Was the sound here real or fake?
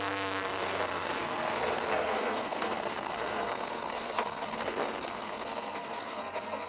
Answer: fake